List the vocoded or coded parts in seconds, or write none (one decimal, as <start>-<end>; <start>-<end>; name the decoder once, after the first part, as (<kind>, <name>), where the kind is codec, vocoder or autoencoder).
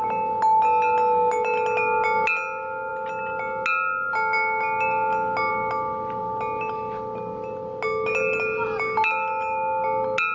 none